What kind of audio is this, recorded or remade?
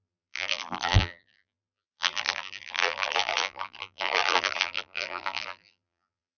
remade